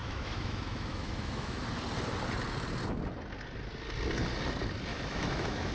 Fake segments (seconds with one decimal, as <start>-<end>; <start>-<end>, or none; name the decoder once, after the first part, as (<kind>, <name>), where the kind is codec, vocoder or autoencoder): 0.0-1.6 (autoencoder, DAC-VAE); 4.9-5.7